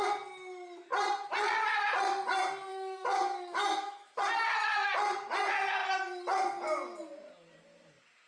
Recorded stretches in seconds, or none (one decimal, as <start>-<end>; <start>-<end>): 0.0-2.7; 4.2-8.3